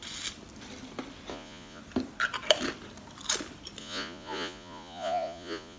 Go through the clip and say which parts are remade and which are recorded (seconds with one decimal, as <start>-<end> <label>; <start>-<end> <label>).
0.0-1.3 recorded; 1.3-1.8 remade; 1.8-3.8 recorded; 3.8-5.8 remade